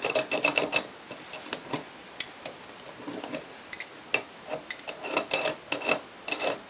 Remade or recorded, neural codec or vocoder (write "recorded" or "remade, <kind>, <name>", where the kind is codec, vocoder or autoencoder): recorded